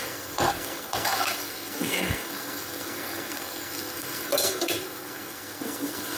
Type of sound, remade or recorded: remade